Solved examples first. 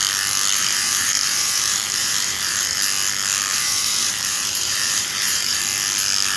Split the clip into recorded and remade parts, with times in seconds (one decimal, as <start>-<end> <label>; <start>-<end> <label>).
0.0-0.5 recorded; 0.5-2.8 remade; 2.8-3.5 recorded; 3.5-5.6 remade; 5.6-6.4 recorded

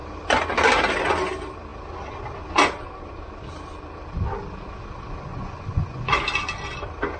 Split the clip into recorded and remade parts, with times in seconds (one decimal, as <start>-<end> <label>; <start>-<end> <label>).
0.0-5.3 recorded; 5.3-6.2 remade; 6.2-7.2 recorded

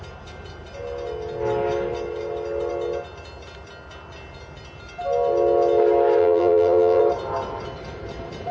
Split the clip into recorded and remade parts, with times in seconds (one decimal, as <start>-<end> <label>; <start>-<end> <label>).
0.0-6.2 recorded; 6.2-7.0 remade; 7.0-8.5 recorded

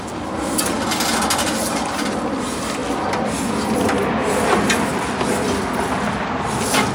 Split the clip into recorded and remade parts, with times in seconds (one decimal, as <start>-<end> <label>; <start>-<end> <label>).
0.0-6.9 recorded

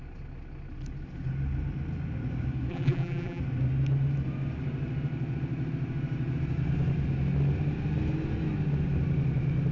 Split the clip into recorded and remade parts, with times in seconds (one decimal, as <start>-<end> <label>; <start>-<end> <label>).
0.0-2.7 recorded; 2.7-3.4 remade; 3.4-9.7 recorded

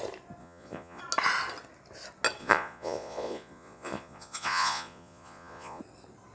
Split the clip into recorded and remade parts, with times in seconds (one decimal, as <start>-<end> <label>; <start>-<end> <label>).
0.0-0.4 recorded; 0.4-1.0 remade; 1.0-2.4 recorded; 2.4-5.8 remade; 5.8-6.3 recorded